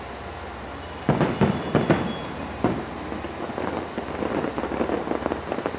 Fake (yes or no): no